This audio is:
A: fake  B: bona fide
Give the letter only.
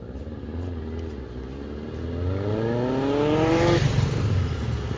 B